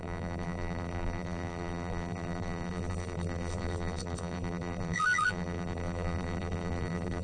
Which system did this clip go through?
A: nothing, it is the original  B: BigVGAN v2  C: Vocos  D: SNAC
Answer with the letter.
B